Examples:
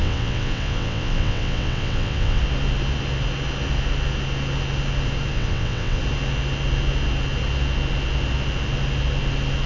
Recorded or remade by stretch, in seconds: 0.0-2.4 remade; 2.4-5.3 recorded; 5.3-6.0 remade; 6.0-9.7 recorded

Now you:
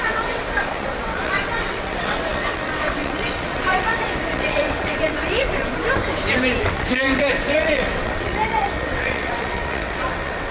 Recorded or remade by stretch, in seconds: 0.0-5.7 remade; 5.7-6.6 recorded; 6.6-10.5 remade

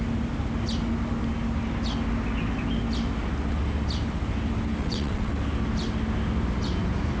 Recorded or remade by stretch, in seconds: 0.0-4.8 recorded; 4.8-5.3 remade; 5.3-7.2 recorded

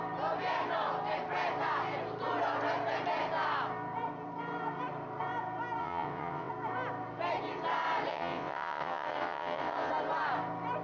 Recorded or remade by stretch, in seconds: 0.0-5.8 recorded; 5.8-6.5 remade; 6.5-8.1 recorded; 8.1-9.9 remade; 9.9-10.8 recorded

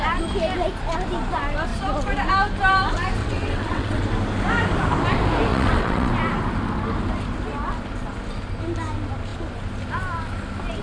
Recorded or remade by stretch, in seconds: 0.0-3.2 recorded; 3.2-4.0 remade; 4.0-5.5 recorded; 5.5-6.1 remade; 6.1-10.8 recorded

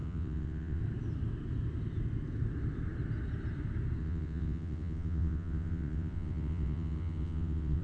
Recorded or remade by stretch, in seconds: 0.0-0.8 remade; 0.8-4.0 recorded; 4.0-7.8 remade